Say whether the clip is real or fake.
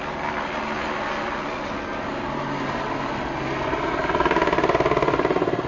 real